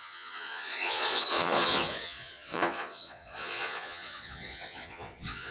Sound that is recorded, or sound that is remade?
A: remade